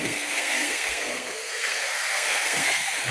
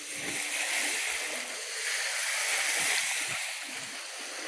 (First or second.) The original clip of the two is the second